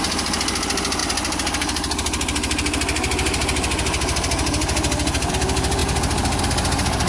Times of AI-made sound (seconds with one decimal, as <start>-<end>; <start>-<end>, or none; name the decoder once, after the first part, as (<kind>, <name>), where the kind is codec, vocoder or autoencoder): none